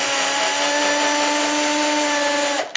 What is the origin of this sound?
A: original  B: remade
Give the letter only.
A